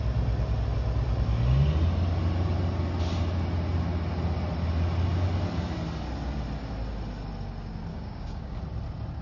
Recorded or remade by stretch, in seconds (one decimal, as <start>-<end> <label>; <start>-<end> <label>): 0.0-7.9 recorded; 7.9-8.6 remade; 8.6-9.2 recorded